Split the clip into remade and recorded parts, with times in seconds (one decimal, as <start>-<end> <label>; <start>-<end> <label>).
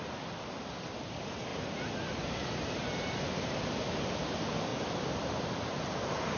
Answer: 0.0-1.5 recorded; 1.5-4.3 remade; 4.3-4.7 recorded; 4.7-6.0 remade; 6.0-6.4 recorded